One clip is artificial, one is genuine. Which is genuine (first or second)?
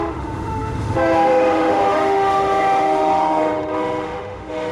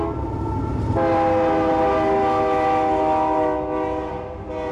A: second